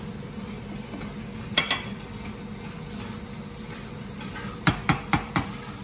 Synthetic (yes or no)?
no